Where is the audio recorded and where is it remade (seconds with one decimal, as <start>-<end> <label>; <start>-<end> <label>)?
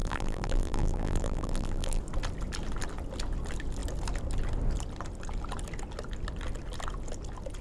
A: 0.0-2.0 remade; 2.0-7.6 recorded